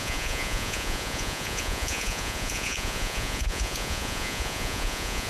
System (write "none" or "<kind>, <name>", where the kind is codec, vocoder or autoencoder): vocoder, Vocos